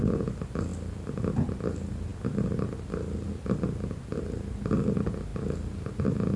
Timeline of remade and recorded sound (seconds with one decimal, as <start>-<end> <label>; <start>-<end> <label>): 0.0-6.4 recorded